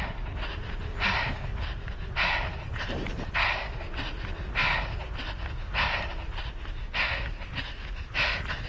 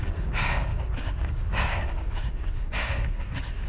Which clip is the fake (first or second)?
second